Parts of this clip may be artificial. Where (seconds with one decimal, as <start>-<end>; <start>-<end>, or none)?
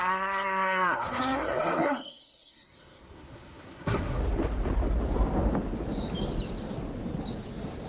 0.0-4.2